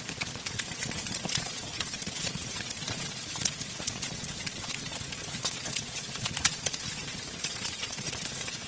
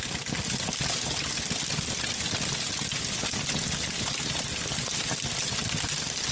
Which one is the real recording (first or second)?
second